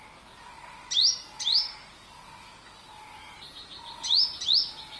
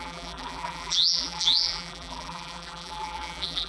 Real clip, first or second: first